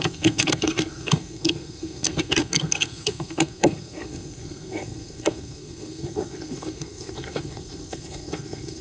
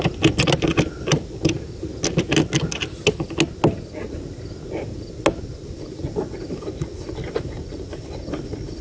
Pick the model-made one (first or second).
first